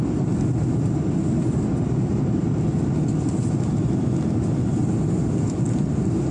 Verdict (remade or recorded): recorded